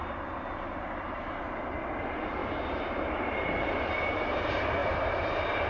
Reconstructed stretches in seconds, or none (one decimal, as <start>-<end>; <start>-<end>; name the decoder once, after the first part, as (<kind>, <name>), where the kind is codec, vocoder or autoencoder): 0.0-1.4 (vocoder, BigVGAN v2); 2.4-3.7; 4.8-5.7